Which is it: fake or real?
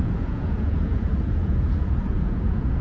fake